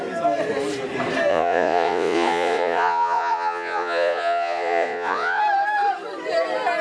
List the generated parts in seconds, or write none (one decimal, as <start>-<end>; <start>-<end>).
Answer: 1.3-5.4